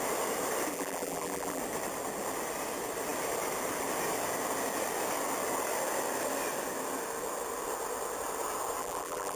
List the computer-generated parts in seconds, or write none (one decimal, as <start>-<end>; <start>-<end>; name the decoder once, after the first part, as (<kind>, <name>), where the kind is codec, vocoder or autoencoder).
0.7-1.6 (vocoder, BigVGAN v2); 8.8-9.4